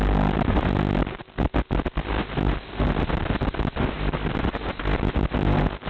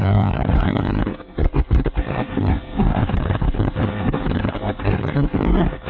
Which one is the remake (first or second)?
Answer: second